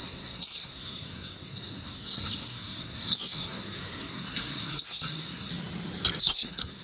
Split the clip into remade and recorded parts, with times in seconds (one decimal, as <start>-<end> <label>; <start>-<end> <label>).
0.0-5.5 remade; 5.5-6.2 recorded; 6.2-6.8 remade